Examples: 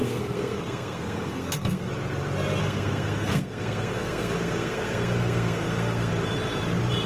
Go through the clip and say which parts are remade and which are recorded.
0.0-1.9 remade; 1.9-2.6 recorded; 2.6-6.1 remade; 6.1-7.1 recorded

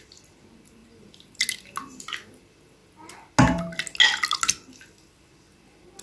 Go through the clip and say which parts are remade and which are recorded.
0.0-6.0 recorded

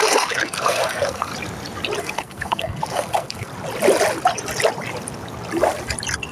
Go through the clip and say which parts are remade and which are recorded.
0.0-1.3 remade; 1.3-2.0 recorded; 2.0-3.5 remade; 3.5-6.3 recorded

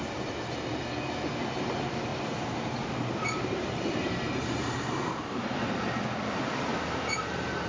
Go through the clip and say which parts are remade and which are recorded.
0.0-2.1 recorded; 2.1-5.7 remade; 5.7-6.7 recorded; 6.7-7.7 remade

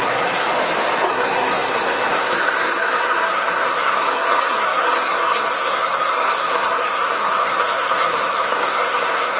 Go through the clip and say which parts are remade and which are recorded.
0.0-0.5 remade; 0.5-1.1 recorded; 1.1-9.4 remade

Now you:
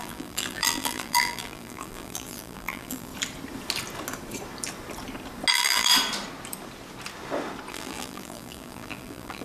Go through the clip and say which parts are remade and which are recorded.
0.0-3.1 remade; 3.1-5.5 recorded; 5.5-5.9 remade; 5.9-7.7 recorded; 7.7-9.4 remade